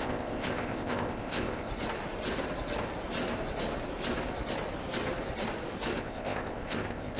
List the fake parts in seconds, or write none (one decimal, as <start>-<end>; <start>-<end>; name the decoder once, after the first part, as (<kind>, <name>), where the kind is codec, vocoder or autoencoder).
0.0-1.7 (codec, ZipCodec); 6.0-7.2